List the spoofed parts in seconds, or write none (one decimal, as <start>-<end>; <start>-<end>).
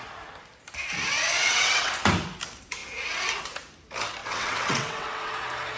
1.4-1.9; 4.2-5.3